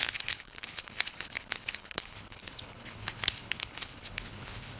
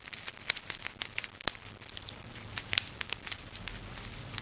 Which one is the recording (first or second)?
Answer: second